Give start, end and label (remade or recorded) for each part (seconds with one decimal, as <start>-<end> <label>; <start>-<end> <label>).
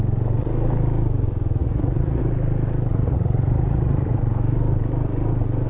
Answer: 0.0-1.6 recorded; 1.6-2.2 remade; 2.2-2.9 recorded; 2.9-4.2 remade; 4.2-5.7 recorded